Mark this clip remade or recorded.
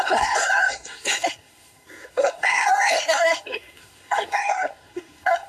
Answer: remade